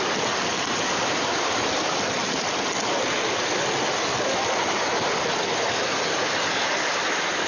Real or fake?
real